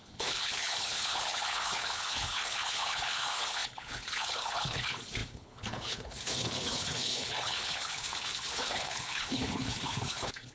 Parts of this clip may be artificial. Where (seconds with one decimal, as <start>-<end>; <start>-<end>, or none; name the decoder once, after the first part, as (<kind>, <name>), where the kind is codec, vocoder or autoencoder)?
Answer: 0.0-10.5 (codec, HILCodec)